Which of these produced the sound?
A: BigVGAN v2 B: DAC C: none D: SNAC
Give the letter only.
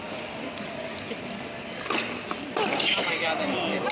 C